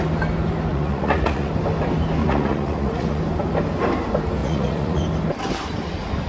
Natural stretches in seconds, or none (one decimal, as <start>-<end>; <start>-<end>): 0.0-0.7; 1.5-2.2; 3.2-4.4; 5.0-6.3